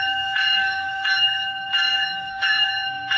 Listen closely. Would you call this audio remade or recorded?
remade